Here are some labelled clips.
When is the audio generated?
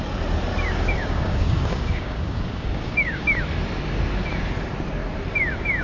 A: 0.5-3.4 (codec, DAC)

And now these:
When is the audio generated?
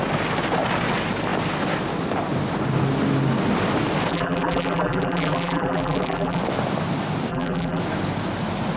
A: 4.1-6.4 (vocoder, BigVGAN v2); 7.3-7.8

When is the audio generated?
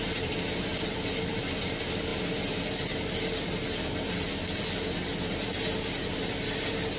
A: none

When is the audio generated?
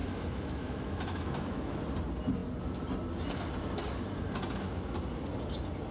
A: 0.0-1.8 (autoencoder, DAC-VAE)